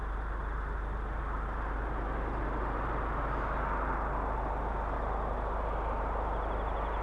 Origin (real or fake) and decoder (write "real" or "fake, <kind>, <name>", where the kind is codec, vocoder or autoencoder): fake, vocoder, BigVGAN v2